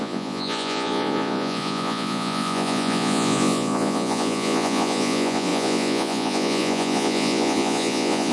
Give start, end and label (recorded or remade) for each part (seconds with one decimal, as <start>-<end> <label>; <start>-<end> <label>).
0.0-8.3 remade